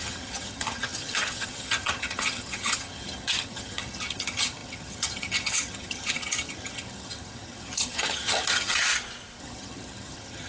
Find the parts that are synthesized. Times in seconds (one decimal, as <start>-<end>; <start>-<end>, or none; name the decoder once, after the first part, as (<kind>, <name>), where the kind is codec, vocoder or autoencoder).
0.0-8.9 (vocoder, HiFi-GAN); 9.4-10.5